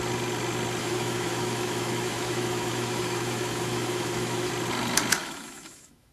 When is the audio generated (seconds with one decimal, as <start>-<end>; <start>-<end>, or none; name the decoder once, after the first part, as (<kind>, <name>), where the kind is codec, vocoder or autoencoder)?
0.8-4.5 (autoencoder, DAC-VAE); 5.2-6.1